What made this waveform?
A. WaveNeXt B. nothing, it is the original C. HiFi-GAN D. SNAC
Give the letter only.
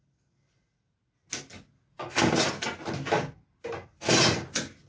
B